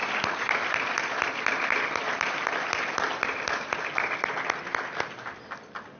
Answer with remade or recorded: recorded